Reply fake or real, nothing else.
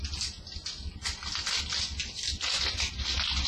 real